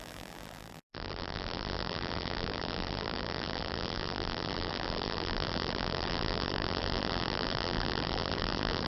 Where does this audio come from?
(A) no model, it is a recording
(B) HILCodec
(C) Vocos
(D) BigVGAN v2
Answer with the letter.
D